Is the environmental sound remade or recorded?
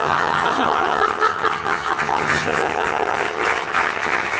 remade